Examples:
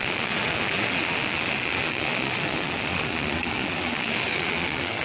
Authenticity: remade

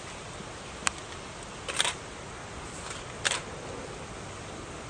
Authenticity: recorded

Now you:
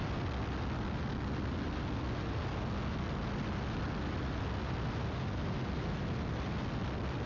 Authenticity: recorded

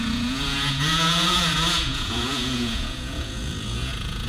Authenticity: remade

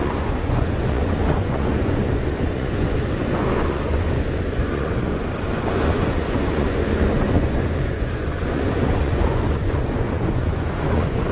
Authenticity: remade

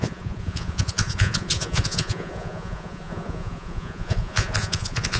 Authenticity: remade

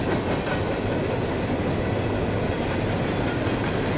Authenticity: recorded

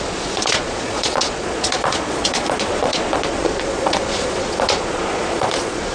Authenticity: remade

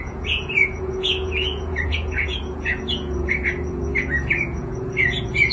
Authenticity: remade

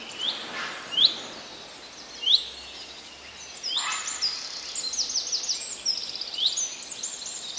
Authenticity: recorded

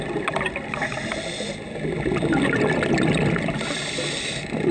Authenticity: recorded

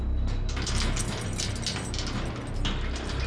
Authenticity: recorded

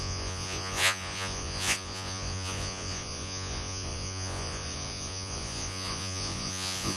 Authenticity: remade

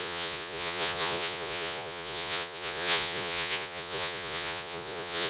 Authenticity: remade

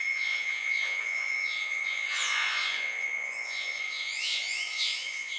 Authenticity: remade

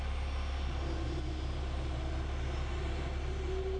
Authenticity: recorded